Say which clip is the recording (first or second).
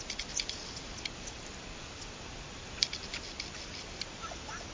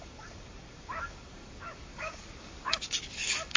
first